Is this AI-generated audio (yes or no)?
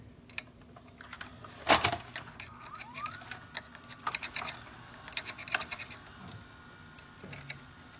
no